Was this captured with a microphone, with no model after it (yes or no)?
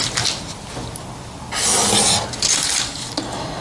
yes